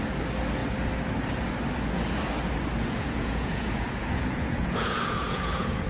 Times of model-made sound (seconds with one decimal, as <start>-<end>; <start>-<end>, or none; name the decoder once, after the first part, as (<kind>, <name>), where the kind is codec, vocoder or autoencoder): 2.8-5.9 (vocoder, Vocos)